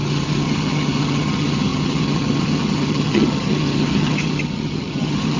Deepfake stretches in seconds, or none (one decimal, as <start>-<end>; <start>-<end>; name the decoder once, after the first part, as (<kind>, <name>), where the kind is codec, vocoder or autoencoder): 0.0-5.4 (vocoder, HiFi-GAN)